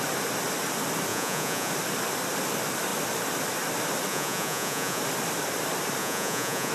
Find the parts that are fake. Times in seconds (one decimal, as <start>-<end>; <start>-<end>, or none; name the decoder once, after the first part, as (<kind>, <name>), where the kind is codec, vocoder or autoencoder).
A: 1.1-1.7 (vocoder, Vocos); 4.1-5.0; 6.0-6.7